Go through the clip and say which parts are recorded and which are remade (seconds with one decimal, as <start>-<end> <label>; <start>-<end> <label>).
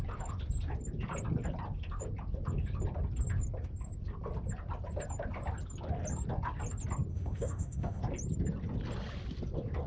0.0-7.1 recorded; 7.1-8.0 remade; 8.0-9.9 recorded